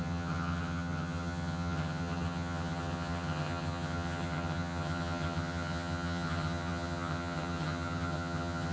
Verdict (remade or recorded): remade